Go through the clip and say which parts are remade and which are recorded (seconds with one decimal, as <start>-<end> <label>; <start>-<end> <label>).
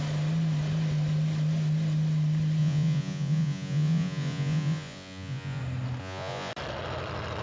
0.0-2.6 recorded; 2.6-5.6 remade; 5.6-6.0 recorded; 6.0-6.5 remade; 6.5-7.4 recorded